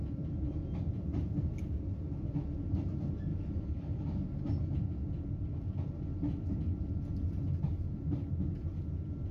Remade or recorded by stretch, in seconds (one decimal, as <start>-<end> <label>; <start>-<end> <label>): 0.0-3.3 recorded; 3.3-4.4 remade; 4.4-9.3 recorded